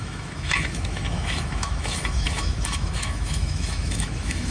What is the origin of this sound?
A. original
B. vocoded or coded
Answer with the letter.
B